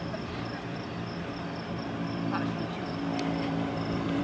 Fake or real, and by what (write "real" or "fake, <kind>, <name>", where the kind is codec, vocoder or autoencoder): fake, vocoder, BigVGAN v2